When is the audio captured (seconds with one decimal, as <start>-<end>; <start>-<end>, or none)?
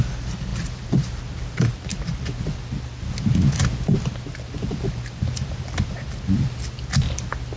0.0-0.5; 1.2-7.6